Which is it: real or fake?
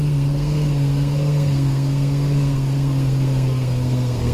fake